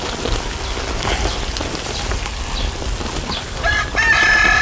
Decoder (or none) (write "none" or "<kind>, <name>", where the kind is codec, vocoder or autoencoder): none